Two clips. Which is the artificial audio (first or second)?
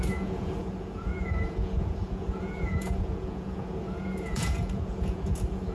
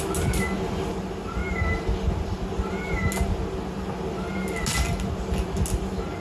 first